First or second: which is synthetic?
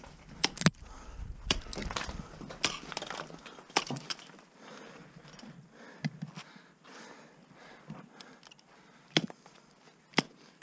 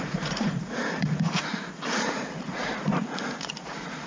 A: second